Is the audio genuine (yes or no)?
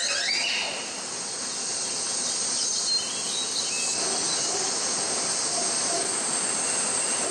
yes